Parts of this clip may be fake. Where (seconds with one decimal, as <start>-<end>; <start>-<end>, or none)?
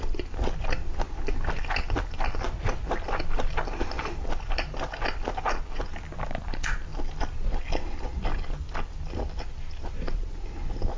none